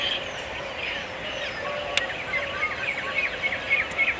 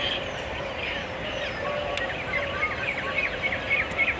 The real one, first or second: first